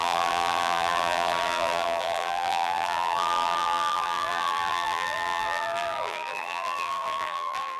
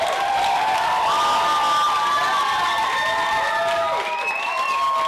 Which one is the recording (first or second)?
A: second